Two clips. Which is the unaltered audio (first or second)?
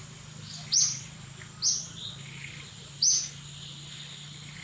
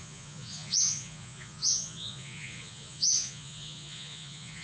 first